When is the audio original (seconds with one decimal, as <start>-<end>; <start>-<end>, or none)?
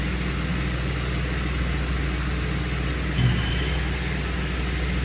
0.0-5.0